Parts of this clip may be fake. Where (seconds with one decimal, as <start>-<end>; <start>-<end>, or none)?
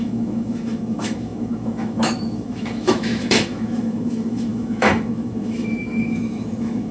0.0-6.9